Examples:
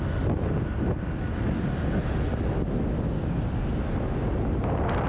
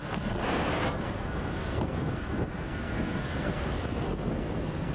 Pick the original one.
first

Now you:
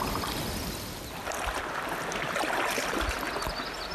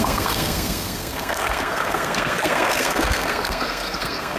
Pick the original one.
first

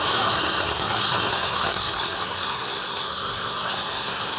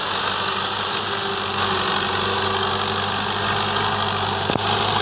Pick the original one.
second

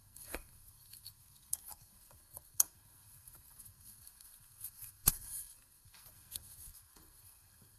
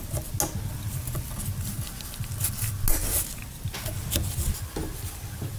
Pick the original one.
second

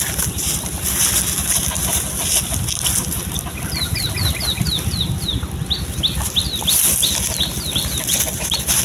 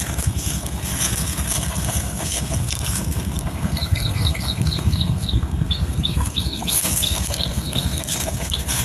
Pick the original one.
first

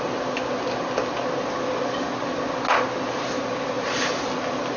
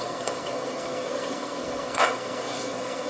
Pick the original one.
first